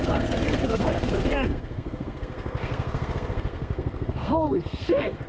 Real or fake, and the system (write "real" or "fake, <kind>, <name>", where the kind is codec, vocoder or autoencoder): fake, codec, SNAC